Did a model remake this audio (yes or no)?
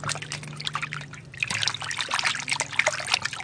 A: no